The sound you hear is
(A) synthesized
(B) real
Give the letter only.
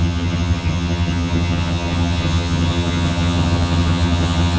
A